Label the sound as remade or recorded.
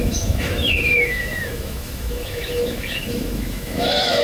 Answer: remade